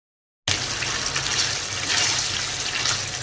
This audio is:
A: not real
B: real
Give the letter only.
B